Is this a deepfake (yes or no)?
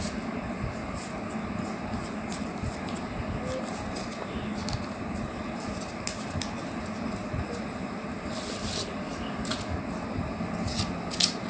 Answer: no